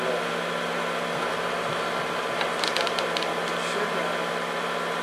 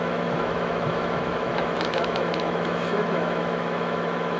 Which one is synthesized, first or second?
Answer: second